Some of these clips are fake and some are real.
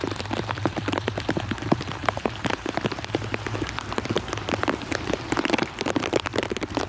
fake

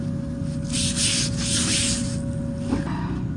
real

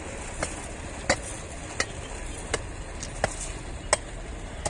real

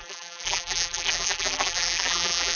fake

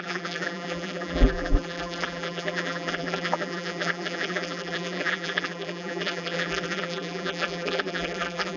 fake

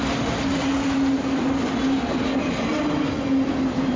real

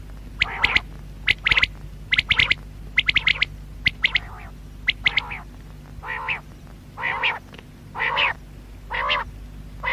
real